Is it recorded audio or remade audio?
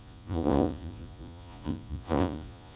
remade